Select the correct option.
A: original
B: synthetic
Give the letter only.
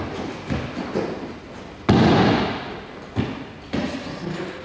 A